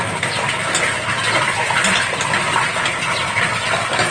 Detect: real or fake real